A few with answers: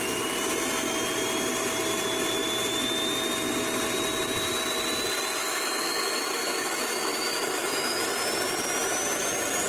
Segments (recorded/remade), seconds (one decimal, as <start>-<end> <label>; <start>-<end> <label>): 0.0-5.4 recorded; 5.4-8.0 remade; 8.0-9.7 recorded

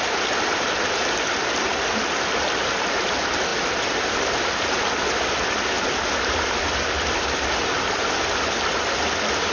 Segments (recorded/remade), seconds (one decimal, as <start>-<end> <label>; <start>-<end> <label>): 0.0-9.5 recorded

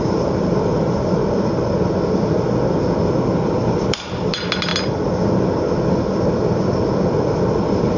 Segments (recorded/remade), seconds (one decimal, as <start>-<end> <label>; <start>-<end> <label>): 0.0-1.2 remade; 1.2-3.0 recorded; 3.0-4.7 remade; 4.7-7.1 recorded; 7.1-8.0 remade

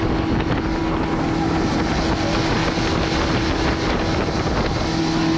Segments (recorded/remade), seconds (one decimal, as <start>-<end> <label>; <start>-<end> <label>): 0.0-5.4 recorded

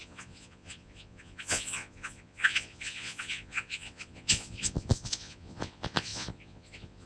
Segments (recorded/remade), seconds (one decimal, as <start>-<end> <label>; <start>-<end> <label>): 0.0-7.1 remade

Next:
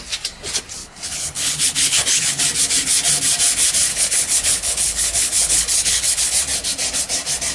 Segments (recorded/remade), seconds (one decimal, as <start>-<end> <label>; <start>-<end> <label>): 0.0-0.8 recorded; 0.8-2.4 remade; 2.4-3.9 recorded; 3.9-6.3 remade; 6.3-7.5 recorded

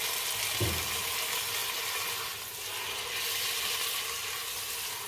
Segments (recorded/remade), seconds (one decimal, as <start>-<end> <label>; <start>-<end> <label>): 0.0-5.1 recorded